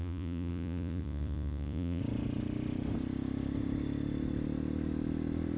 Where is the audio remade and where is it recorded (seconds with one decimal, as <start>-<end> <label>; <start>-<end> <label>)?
0.0-2.0 remade; 2.0-5.6 recorded